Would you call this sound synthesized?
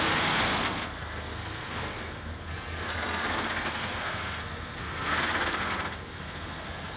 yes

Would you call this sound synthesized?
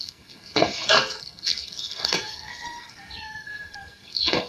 yes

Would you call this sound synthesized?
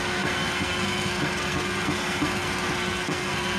yes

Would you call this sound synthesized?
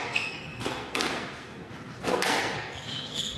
yes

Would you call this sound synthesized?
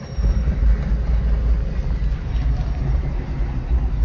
no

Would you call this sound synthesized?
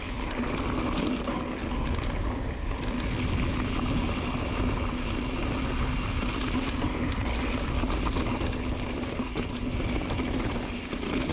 no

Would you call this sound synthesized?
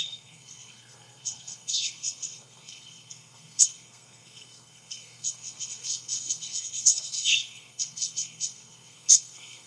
yes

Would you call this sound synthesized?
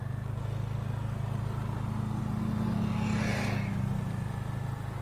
no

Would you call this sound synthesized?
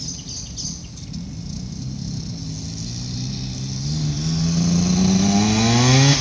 no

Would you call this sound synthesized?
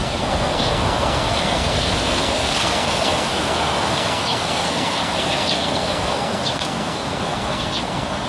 yes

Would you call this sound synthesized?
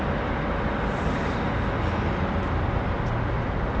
no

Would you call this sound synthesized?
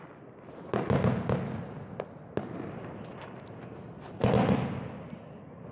no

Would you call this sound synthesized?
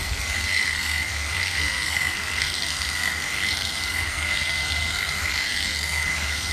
yes